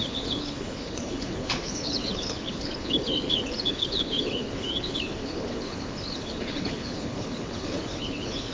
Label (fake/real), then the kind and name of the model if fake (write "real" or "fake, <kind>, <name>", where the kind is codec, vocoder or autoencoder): fake, codec, HILCodec